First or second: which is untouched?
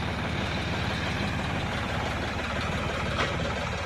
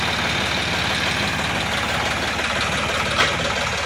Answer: second